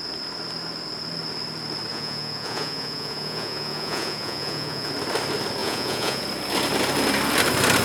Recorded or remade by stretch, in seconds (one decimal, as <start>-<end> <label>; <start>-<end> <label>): 0.0-1.9 recorded; 1.9-4.9 remade; 4.9-5.6 recorded; 5.6-6.2 remade; 6.2-7.8 recorded